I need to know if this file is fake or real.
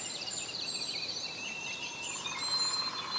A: fake